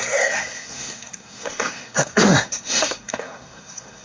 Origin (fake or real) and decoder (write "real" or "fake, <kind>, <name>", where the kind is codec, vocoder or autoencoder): fake, codec, SNAC